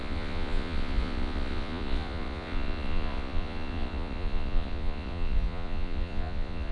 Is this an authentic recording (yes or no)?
no